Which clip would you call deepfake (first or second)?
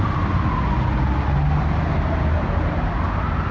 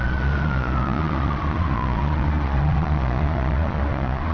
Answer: second